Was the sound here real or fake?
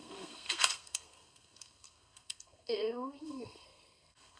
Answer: fake